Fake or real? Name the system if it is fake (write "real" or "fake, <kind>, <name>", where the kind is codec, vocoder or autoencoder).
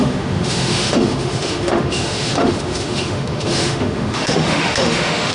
fake, autoencoder, DAC-VAE